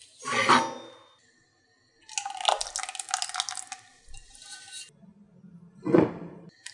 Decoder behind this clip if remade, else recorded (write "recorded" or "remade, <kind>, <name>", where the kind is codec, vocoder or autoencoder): recorded